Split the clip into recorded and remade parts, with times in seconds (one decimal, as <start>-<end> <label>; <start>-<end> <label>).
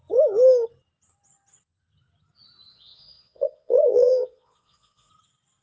0.0-2.7 recorded; 2.7-5.1 remade; 5.1-5.6 recorded